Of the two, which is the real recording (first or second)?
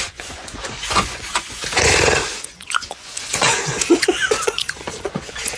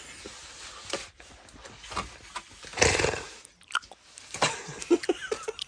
second